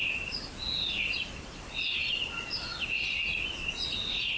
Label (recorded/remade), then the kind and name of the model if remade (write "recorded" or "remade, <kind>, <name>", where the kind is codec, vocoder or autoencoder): recorded